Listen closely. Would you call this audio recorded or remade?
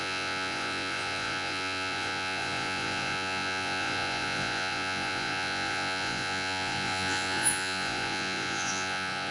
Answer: remade